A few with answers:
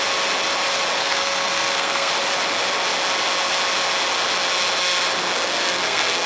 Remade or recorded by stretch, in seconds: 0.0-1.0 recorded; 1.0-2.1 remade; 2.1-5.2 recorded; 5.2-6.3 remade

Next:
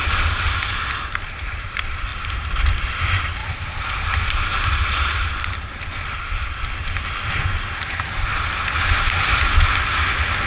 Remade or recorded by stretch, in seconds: 0.0-10.5 recorded

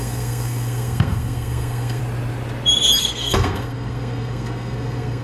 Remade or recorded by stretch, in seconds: 0.0-2.0 remade; 2.0-3.0 recorded; 3.0-5.2 remade

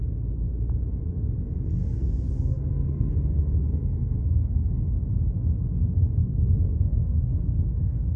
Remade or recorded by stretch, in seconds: 0.0-1.8 recorded; 1.8-3.1 remade; 3.1-3.6 recorded; 3.6-4.8 remade; 4.8-6.2 recorded; 6.2-8.2 remade

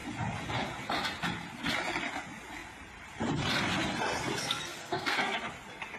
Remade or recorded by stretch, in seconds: 0.0-4.4 recorded; 4.4-5.5 remade; 5.5-6.0 recorded

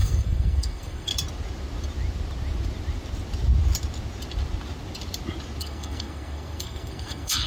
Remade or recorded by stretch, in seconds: 0.0-1.1 remade; 1.1-5.6 recorded; 5.6-7.5 remade

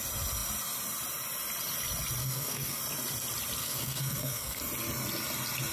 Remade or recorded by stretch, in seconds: 0.0-2.2 recorded; 2.2-2.8 remade; 2.8-3.6 recorded; 3.6-4.6 remade; 4.6-5.7 recorded